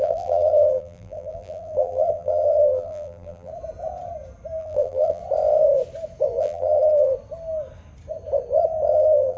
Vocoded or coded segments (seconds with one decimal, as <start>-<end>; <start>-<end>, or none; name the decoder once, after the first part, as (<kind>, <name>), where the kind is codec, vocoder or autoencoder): 0.0-3.5 (vocoder, BigVGAN v2); 4.6-5.2; 6.4-7.1; 8.9-9.4